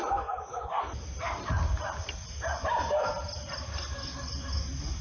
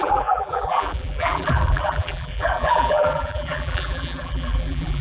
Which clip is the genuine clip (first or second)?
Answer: first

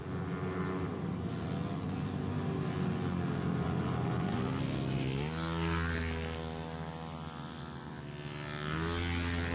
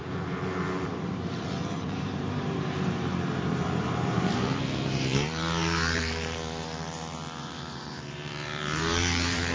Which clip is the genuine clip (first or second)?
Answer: first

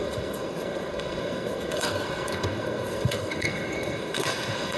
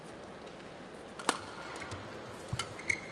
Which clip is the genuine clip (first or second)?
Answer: second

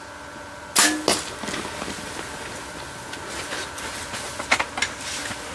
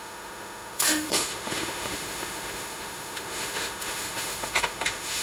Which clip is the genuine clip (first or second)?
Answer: first